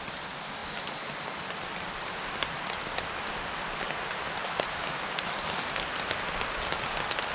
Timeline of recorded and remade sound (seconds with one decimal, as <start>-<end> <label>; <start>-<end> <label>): 0.0-7.3 recorded